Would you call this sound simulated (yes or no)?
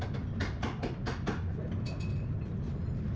no